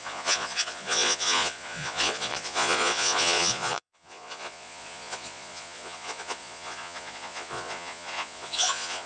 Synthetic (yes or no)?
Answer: yes